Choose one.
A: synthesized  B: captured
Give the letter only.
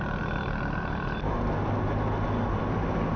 B